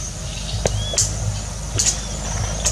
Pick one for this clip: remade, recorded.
recorded